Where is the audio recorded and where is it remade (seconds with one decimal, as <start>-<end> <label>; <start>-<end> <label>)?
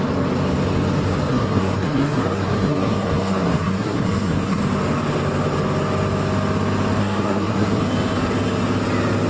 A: 0.0-1.3 recorded; 1.3-4.6 remade; 4.6-7.0 recorded; 7.0-7.8 remade; 7.8-9.3 recorded